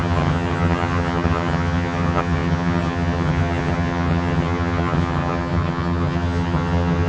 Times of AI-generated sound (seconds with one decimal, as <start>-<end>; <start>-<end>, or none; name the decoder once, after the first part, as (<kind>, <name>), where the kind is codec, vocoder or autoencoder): 0.0-7.1 (vocoder, HiFi-GAN)

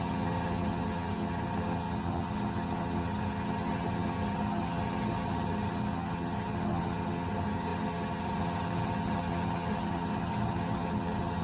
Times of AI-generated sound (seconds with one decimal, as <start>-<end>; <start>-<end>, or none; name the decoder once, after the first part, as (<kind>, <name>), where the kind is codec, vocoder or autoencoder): 0.0-11.4 (vocoder, HiFi-GAN)